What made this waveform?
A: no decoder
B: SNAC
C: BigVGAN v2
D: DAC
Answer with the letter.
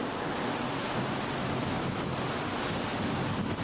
A